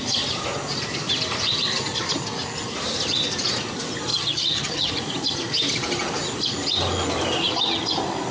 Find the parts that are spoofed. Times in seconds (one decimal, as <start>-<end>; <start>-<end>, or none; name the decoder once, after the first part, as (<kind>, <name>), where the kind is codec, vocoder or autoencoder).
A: 4.1-4.9 (vocoder, HiFi-GAN)